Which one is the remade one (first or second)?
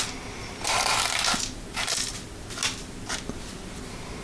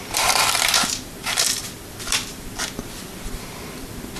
second